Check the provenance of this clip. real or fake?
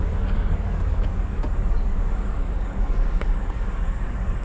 fake